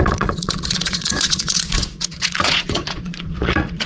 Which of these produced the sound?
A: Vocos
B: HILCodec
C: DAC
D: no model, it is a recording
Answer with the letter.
A